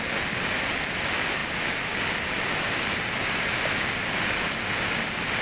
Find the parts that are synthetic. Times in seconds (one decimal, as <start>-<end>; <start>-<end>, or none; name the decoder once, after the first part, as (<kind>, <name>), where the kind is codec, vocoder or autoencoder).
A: none